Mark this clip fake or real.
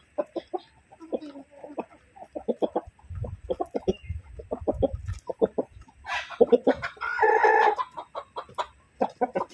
real